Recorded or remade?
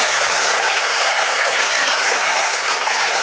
remade